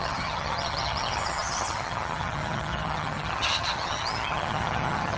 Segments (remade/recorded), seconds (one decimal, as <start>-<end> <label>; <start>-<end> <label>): 0.0-5.2 remade